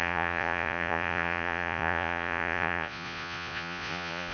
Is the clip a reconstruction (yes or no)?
yes